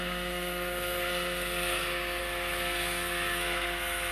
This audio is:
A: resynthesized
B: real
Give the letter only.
A